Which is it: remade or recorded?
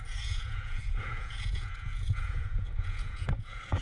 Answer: remade